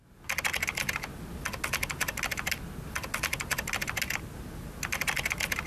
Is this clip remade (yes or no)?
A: no